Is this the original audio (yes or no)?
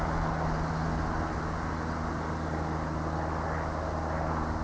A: yes